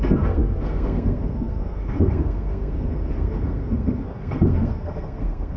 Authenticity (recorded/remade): remade